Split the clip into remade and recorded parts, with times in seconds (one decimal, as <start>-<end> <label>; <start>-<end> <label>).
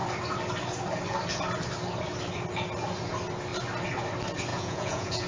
0.0-4.5 recorded; 4.5-5.3 remade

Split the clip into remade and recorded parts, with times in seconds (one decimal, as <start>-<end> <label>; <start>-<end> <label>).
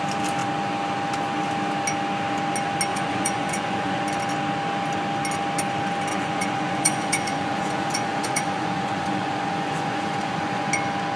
0.0-2.9 recorded; 2.9-4.0 remade; 4.0-6.1 recorded; 6.1-10.7 remade; 10.7-11.2 recorded